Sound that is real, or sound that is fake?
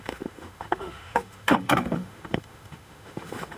fake